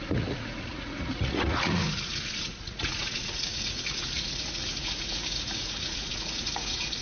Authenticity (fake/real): fake